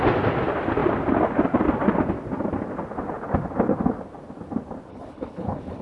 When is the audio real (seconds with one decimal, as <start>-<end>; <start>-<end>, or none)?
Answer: 0.0-4.9